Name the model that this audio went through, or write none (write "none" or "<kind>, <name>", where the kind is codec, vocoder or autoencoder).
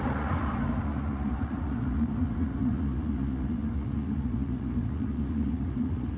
vocoder, Vocos